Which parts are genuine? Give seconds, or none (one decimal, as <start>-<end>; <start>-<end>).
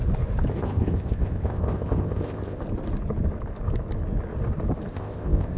0.0-0.5; 2.6-4.9